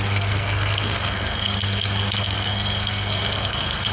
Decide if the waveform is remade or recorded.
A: remade